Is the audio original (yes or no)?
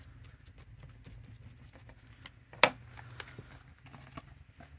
yes